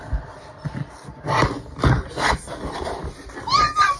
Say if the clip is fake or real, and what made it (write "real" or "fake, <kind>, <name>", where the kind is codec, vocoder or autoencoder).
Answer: real